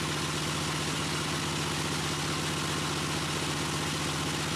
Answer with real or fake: real